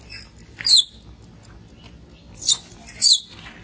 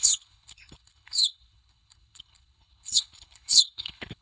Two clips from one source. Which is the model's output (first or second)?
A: second